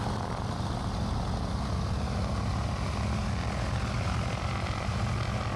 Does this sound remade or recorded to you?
recorded